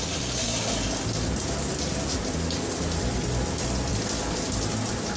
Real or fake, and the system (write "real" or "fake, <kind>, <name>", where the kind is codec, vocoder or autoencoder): real